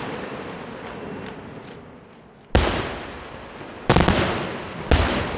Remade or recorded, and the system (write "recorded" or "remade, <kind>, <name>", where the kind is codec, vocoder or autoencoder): recorded